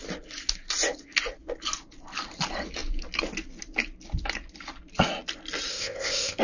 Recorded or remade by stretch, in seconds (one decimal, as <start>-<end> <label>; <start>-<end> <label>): 0.0-5.7 recorded; 5.7-6.4 remade